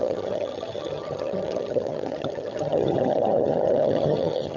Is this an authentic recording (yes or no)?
no